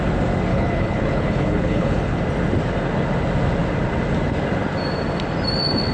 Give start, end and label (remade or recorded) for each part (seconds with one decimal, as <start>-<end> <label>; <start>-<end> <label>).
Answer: 0.0-0.5 recorded; 0.5-2.2 remade; 2.2-5.9 recorded